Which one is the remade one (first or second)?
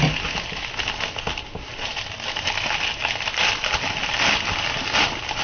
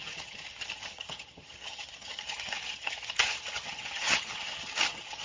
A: second